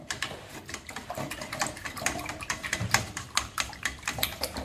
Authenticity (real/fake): fake